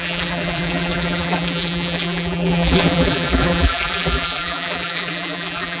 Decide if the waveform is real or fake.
fake